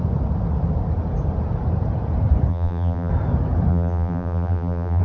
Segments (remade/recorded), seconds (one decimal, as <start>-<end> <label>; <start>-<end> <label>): 0.0-2.5 recorded; 2.5-3.1 remade; 3.1-3.7 recorded; 3.7-5.0 remade